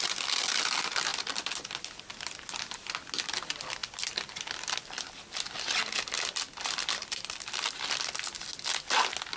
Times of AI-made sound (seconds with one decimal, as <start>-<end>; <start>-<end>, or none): 1.1-2.0; 3.8-7.5